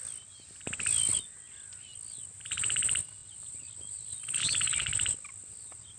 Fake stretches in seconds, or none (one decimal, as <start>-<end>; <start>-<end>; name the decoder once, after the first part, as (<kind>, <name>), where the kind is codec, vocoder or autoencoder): none